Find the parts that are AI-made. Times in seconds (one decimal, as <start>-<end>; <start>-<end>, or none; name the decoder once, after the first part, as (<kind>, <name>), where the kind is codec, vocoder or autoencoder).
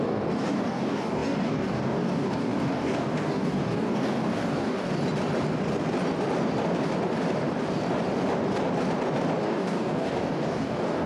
0.0-4.9 (codec, DAC); 9.4-11.1